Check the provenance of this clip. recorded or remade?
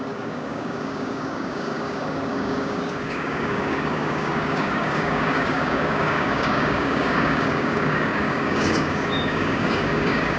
remade